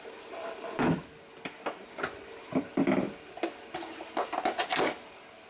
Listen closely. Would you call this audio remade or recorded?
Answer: recorded